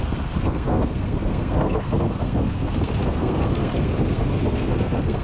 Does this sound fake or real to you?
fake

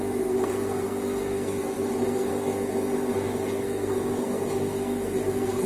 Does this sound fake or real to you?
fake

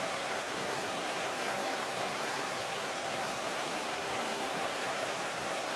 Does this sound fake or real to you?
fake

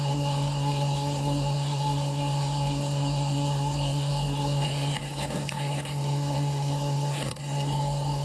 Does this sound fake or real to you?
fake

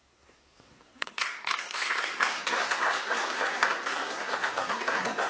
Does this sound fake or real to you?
fake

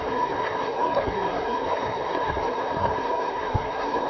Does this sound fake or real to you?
fake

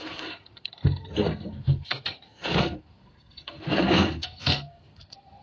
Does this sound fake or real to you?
fake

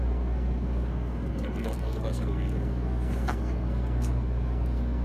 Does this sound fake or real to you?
fake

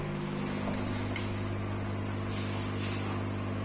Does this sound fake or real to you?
real